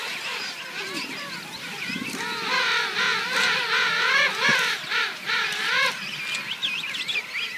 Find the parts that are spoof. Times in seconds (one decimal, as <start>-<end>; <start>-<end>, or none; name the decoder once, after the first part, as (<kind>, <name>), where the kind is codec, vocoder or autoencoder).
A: 4.5-5.6 (vocoder, BigVGAN v2)